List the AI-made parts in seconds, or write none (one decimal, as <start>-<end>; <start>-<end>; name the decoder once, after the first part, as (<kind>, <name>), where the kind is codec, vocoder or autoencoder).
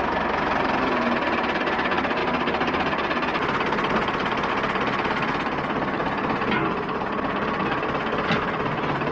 none